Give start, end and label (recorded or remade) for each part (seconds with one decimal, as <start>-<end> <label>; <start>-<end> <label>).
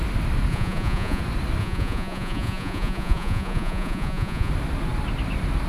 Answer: 0.0-0.5 recorded; 0.5-1.2 remade; 1.2-1.6 recorded; 1.6-4.5 remade; 4.5-5.7 recorded